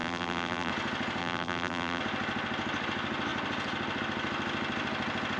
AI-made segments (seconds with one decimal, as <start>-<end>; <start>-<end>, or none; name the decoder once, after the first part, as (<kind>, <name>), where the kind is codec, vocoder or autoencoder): 0.0-0.7 (vocoder, BigVGAN v2); 1.2-2.0